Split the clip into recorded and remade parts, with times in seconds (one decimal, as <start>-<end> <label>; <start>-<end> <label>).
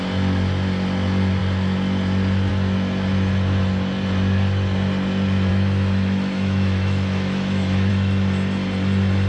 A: 0.0-5.5 recorded; 5.5-7.9 remade; 7.9-9.3 recorded